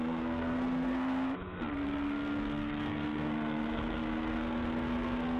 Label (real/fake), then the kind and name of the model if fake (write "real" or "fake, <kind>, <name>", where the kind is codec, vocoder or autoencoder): fake, codec, SNAC